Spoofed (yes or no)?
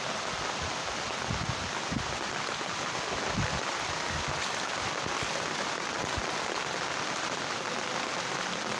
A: no